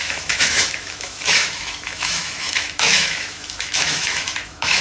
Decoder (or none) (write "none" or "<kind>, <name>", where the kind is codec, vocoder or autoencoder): autoencoder, DAC-VAE